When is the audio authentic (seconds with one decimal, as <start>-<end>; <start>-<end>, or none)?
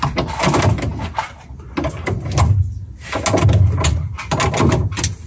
0.0-5.3